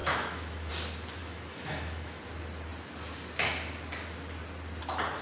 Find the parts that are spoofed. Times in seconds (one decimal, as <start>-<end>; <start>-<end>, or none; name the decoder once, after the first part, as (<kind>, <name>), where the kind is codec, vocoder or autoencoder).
0.0-0.7 (autoencoder, DAC-VAE); 1.2-2.2